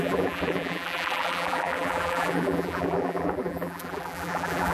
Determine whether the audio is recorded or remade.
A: remade